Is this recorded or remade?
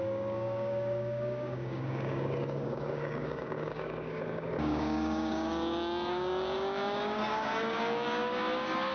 remade